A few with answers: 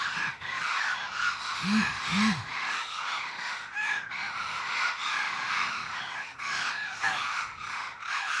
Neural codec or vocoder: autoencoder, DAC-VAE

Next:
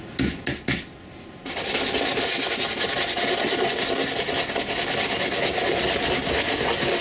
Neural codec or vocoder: none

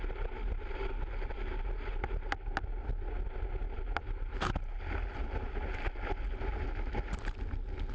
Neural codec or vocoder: none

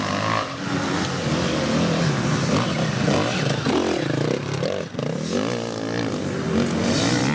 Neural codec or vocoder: none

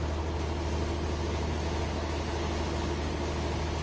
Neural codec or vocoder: none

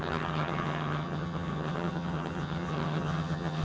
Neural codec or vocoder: vocoder, HiFi-GAN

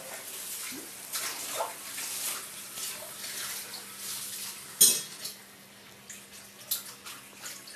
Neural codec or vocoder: none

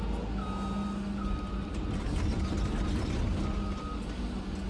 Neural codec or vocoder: none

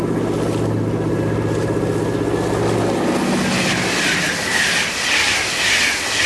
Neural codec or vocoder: none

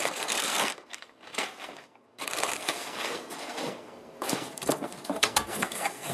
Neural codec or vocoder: codec, SNAC